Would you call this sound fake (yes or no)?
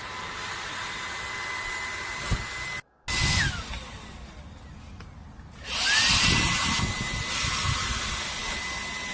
no